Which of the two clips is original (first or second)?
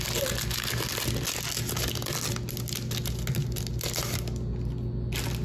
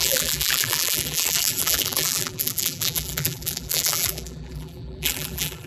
first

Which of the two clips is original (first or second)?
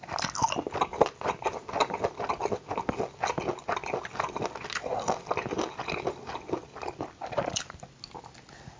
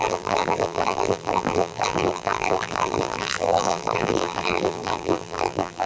first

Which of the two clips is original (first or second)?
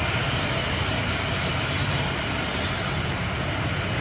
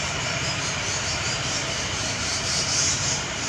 first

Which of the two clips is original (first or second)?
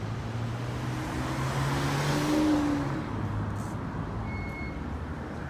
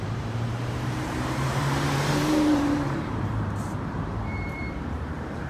first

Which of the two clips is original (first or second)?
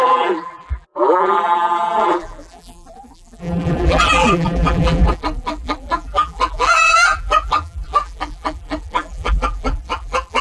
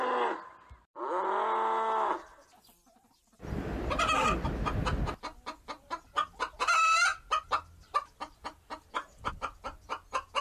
second